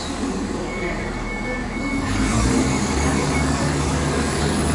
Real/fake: fake